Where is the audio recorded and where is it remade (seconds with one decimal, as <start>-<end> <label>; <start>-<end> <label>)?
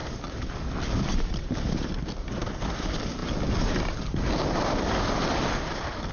0.0-6.1 recorded